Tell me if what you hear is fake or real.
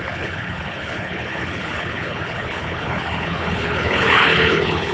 fake